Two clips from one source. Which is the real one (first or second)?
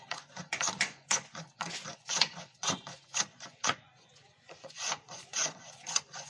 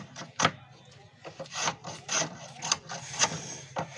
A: second